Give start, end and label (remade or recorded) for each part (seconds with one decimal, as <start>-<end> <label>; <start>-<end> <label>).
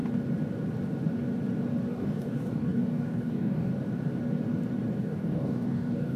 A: 0.0-1.9 recorded; 1.9-3.7 remade; 3.7-5.0 recorded; 5.0-6.2 remade